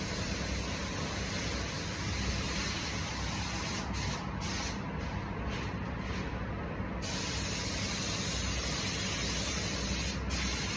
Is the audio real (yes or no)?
yes